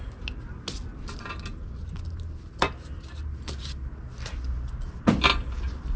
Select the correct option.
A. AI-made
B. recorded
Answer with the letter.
B